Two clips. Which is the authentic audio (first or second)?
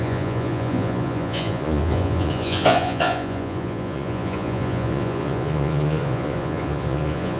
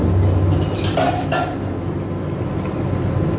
second